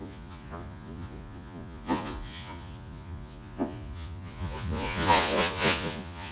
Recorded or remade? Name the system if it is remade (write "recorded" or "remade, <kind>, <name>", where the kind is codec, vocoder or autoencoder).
remade, vocoder, Vocos